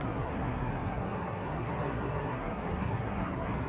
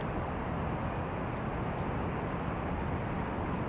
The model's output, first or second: first